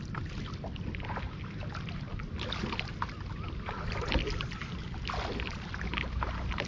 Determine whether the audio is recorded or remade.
recorded